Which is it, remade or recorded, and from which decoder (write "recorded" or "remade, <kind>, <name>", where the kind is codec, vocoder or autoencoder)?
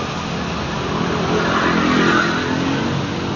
recorded